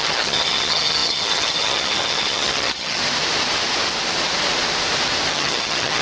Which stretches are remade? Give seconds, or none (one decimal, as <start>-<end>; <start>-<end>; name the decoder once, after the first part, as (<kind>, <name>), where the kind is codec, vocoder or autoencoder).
0.0-3.0 (vocoder, HiFi-GAN); 5.3-6.0